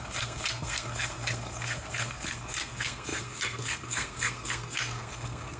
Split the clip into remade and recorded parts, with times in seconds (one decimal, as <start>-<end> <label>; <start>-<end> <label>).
0.0-5.6 remade